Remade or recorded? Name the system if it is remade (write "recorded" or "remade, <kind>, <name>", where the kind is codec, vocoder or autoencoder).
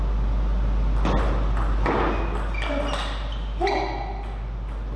recorded